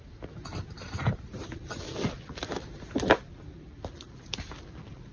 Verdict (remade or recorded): remade